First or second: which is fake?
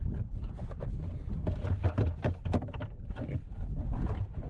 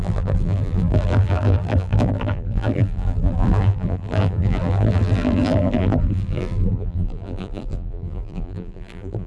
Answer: second